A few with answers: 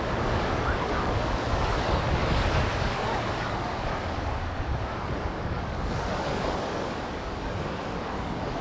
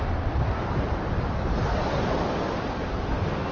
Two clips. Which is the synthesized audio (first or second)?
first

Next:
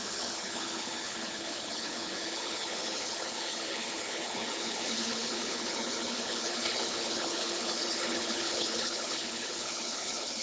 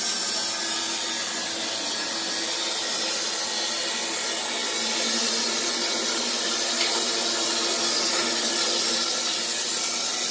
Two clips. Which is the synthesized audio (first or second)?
first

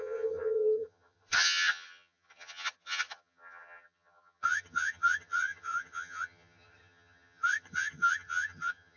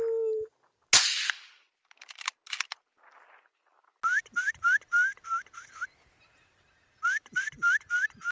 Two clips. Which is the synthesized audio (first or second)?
first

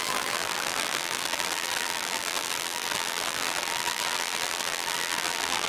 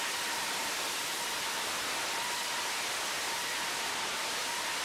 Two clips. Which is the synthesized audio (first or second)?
first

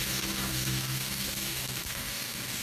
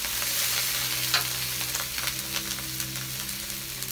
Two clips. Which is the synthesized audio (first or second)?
first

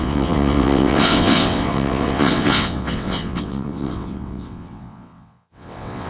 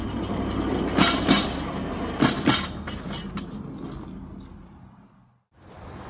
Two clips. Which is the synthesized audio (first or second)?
first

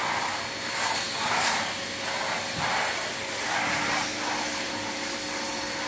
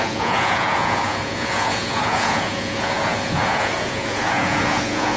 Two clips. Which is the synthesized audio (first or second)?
second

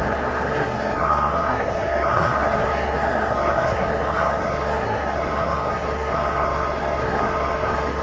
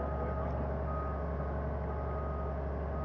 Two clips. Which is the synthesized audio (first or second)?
first